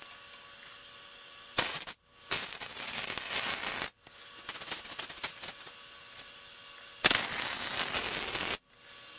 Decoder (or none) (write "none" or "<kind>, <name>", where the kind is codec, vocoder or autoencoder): none